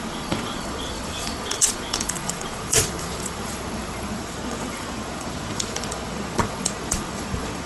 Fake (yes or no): yes